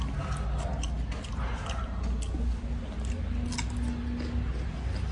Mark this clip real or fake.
real